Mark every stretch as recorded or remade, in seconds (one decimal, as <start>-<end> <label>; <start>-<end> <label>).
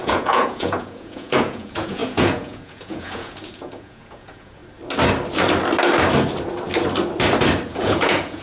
0.0-4.6 remade; 4.6-7.8 recorded; 7.8-8.4 remade